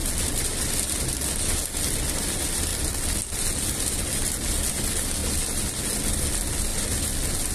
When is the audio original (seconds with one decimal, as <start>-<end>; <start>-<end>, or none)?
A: 0.0-7.5